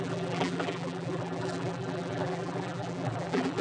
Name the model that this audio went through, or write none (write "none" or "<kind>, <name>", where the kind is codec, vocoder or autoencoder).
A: vocoder, BigVGAN v2